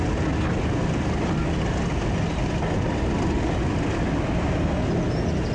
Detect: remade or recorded recorded